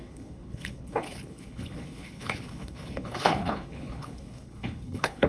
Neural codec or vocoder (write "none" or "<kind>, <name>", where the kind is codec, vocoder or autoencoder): codec, HILCodec